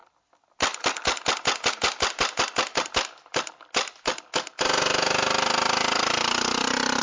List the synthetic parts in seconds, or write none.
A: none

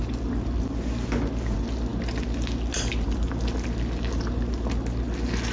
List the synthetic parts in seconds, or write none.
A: none

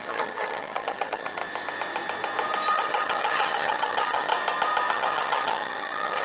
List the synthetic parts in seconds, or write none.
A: 0.0-1.4; 2.7-4.3; 4.9-6.2

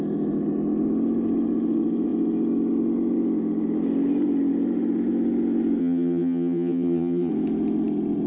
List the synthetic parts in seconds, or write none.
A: 5.8-7.3